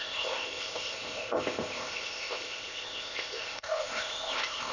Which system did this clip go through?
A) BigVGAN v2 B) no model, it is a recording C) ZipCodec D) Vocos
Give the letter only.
C